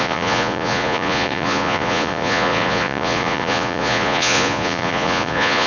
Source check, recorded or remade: remade